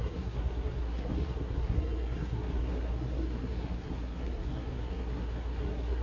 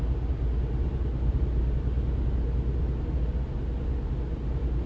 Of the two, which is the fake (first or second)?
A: first